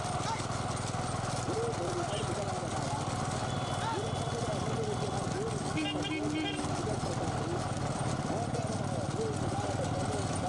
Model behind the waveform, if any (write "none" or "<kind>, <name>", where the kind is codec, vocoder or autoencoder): none